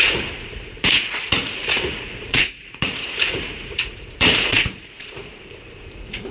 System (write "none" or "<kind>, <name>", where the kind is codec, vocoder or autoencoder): vocoder, Vocos